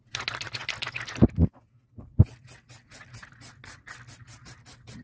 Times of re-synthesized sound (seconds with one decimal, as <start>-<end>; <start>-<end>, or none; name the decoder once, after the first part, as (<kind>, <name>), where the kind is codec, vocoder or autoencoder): none